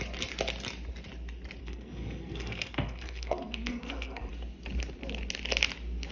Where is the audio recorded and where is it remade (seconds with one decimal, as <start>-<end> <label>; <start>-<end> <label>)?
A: 0.0-1.6 recorded; 1.6-4.3 remade; 4.3-6.1 recorded